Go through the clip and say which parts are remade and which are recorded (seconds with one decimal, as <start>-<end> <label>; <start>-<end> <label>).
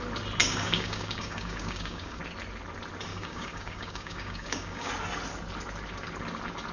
0.0-0.4 recorded; 0.4-2.2 remade; 2.2-3.1 recorded; 3.1-4.9 remade; 4.9-6.7 recorded